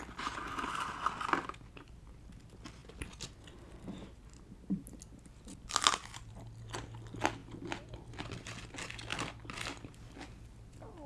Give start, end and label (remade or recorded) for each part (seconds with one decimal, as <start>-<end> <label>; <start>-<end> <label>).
0.0-11.1 recorded